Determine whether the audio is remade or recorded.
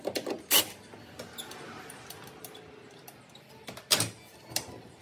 recorded